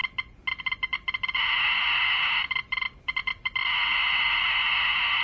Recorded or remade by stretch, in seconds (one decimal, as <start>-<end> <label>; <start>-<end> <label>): 0.0-5.2 recorded

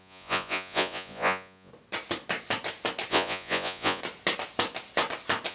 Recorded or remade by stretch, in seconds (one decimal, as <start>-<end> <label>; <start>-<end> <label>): 0.0-1.7 remade; 1.7-3.1 recorded; 3.1-4.0 remade; 4.0-5.5 recorded

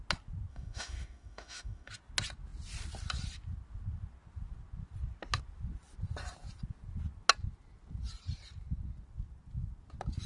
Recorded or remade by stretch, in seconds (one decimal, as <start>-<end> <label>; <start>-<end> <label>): 0.0-0.5 recorded; 0.5-1.9 remade; 1.9-10.3 recorded

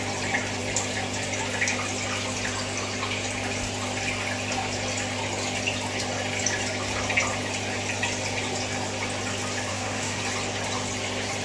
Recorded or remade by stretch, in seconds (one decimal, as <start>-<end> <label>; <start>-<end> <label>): 0.0-9.7 recorded; 9.7-10.2 remade; 10.2-11.4 recorded